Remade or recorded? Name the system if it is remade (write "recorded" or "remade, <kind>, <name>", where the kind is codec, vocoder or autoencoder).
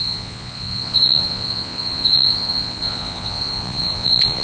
remade, vocoder, Vocos